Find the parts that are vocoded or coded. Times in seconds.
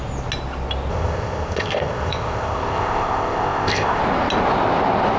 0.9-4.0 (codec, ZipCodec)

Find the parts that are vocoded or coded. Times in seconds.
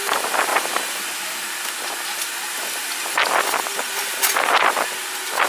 none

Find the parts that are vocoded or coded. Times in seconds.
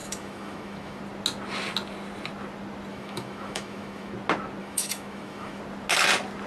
0.0-1.0 (autoencoder, DAC-VAE); 2.9-4.1; 4.6-5.6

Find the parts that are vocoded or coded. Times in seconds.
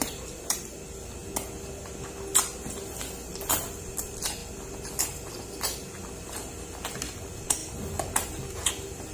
0.0-1.2 (vocoder, BigVGAN v2); 3.3-4.4; 4.9-9.1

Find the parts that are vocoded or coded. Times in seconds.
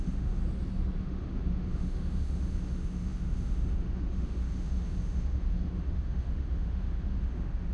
0.0-0.4 (autoencoder, DAC-VAE); 1.0-7.7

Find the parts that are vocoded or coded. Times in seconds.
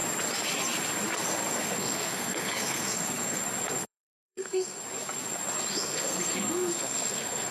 1.5-3.4 (codec, SNAC); 3.8-4.8; 5.7-7.5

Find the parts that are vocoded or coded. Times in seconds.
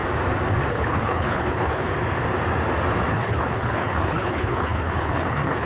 0.7-1.9 (codec, HILCodec); 3.1-5.7